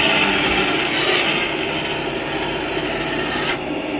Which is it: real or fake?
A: real